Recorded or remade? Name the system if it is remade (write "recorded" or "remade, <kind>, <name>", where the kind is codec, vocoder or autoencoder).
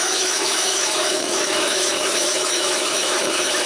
remade, autoencoder, DAC-VAE